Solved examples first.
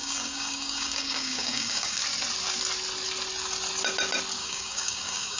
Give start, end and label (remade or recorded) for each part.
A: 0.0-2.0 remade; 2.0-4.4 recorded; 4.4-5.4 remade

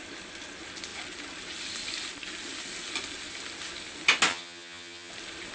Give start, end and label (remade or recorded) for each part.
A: 0.0-4.3 recorded; 4.3-5.1 remade; 5.1-5.5 recorded

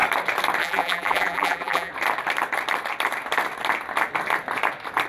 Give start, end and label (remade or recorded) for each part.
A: 0.0-0.6 recorded; 0.6-1.9 remade; 1.9-5.1 recorded

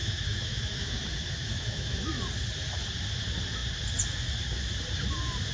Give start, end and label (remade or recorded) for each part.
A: 0.0-2.2 remade; 2.2-5.5 recorded

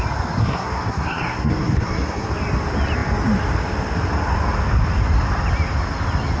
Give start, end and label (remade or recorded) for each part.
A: 0.0-0.4 recorded; 0.4-2.3 remade; 2.3-6.4 recorded

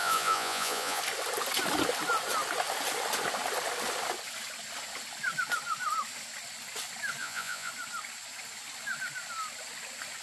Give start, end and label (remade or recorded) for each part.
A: 0.0-1.0 remade; 1.0-7.2 recorded; 7.2-7.7 remade; 7.7-10.2 recorded

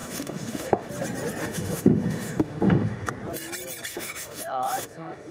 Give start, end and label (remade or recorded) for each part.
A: 0.0-0.9 remade; 0.9-1.4 recorded; 1.4-3.1 remade; 3.1-3.9 recorded; 3.9-5.3 remade

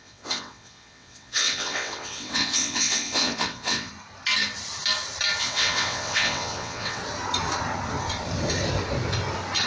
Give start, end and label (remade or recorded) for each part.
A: 0.0-3.9 remade; 3.9-5.4 recorded; 5.4-7.0 remade; 7.0-9.7 recorded